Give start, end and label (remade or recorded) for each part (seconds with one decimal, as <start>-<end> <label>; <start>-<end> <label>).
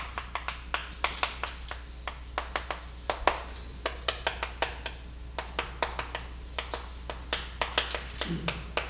0.0-8.9 recorded